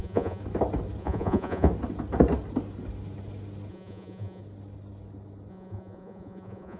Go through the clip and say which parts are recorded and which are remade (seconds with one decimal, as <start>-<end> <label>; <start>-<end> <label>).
0.0-0.4 remade; 0.4-1.0 recorded; 1.0-1.7 remade; 1.7-3.7 recorded; 3.7-4.4 remade; 4.4-5.5 recorded; 5.5-6.8 remade